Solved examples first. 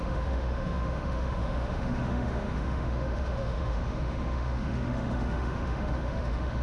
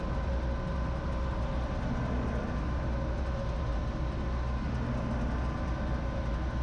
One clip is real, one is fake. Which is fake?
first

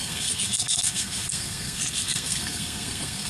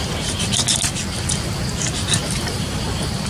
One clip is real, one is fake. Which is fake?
first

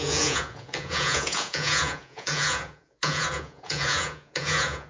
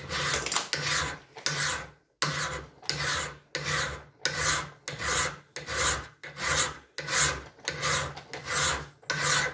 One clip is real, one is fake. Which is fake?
first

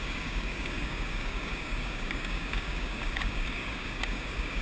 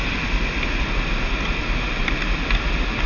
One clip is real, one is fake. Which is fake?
first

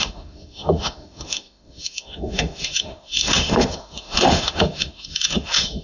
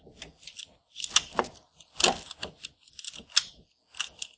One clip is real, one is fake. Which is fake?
first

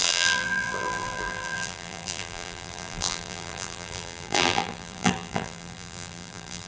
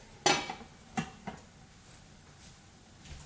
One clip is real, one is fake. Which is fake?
first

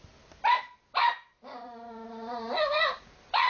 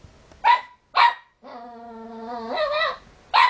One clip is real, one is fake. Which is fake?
first